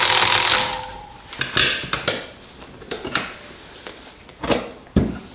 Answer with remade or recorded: recorded